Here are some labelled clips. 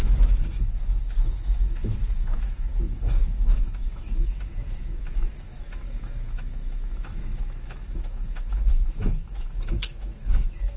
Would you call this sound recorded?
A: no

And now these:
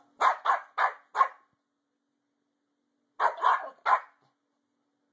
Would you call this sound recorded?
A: yes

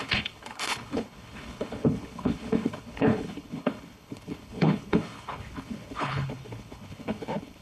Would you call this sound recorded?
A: no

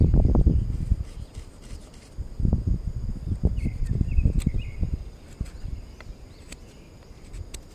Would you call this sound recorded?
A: yes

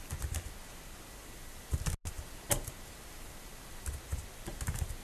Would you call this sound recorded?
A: yes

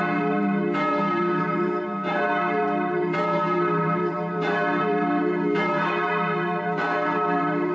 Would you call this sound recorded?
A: no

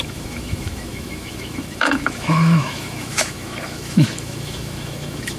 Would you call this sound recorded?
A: no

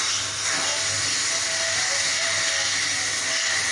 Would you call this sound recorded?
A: yes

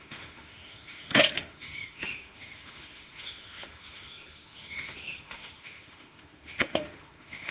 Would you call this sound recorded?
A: no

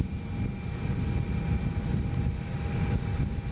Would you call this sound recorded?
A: yes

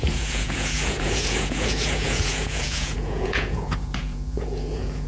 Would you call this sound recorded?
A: no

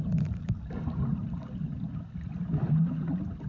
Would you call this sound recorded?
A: yes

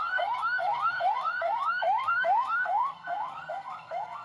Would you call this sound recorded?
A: no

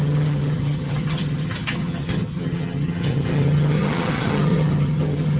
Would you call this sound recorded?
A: no